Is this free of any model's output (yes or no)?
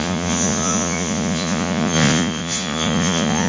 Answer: no